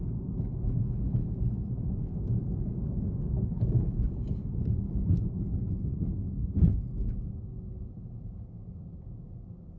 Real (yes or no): yes